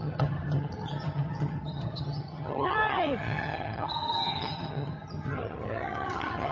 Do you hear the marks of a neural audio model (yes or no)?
yes